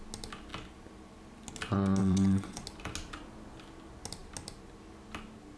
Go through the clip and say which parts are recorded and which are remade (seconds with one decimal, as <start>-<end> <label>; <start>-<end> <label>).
0.0-2.0 recorded; 2.0-2.6 remade; 2.6-5.6 recorded